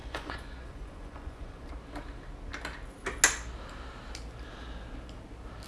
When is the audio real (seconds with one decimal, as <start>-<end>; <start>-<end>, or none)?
1.7-5.7